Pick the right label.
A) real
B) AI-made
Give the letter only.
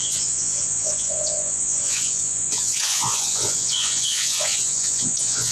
B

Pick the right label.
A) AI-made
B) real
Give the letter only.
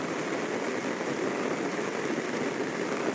B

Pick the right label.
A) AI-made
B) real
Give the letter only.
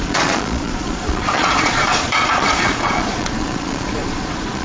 A